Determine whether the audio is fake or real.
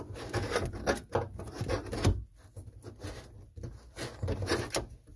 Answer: real